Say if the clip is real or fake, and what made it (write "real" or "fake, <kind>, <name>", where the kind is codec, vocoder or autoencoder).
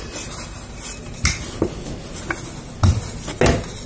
real